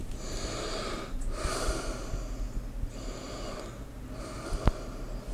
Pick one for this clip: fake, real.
real